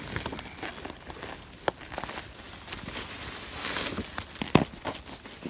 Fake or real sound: real